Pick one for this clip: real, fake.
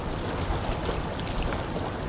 real